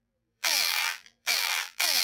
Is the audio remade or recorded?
remade